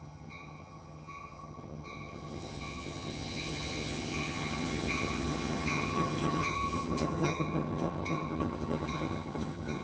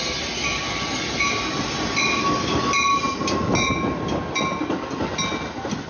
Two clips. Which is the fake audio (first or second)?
first